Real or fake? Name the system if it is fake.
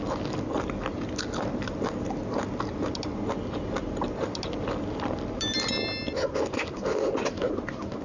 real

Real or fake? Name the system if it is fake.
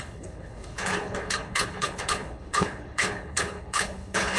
fake, codec, HILCodec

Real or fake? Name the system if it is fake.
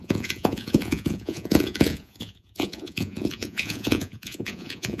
fake, vocoder, Vocos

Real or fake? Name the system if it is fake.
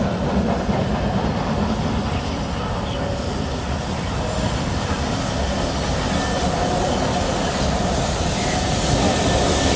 real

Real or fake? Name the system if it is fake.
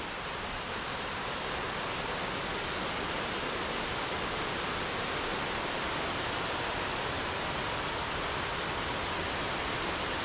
real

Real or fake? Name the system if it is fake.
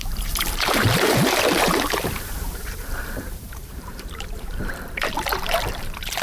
fake, vocoder, BigVGAN v2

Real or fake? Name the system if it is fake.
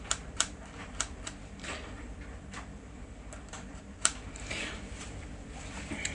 fake, vocoder, BigVGAN v2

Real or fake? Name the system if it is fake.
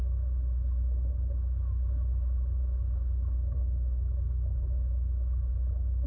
real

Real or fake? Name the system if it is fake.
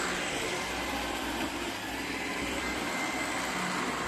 fake, vocoder, BigVGAN v2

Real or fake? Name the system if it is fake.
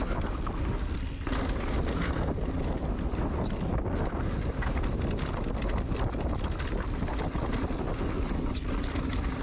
real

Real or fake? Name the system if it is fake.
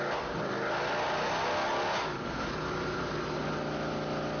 real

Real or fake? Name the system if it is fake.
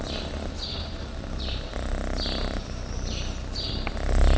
real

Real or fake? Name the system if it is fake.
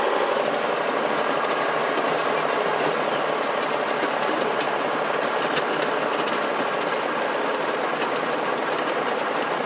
real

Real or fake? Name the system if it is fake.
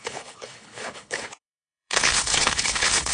fake, codec, HILCodec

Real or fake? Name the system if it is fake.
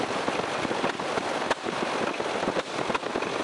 real